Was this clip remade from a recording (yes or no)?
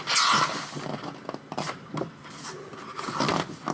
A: no